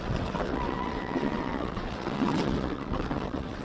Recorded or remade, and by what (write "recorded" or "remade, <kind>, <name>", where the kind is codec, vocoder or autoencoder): remade, vocoder, WaveNeXt